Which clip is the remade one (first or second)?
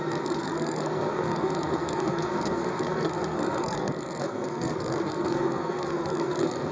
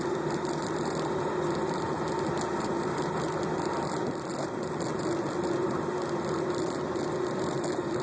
first